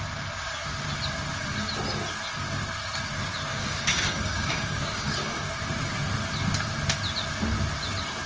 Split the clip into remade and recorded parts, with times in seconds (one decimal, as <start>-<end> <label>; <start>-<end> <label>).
0.0-3.5 recorded; 3.5-5.5 remade; 5.5-8.3 recorded